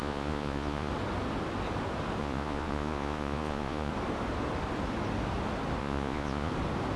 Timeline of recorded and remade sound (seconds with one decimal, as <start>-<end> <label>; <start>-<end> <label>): 0.0-0.9 remade; 0.9-2.2 recorded; 2.2-3.9 remade; 3.9-5.8 recorded; 5.8-6.5 remade; 6.5-7.0 recorded